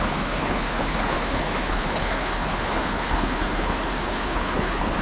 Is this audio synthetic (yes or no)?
yes